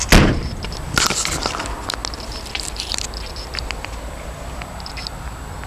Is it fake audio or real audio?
real